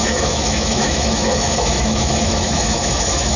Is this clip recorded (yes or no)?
no